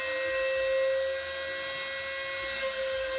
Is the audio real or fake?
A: real